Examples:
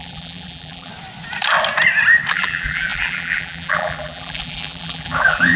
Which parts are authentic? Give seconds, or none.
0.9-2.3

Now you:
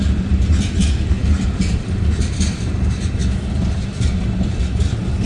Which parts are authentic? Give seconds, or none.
0.0-1.2; 2.6-5.3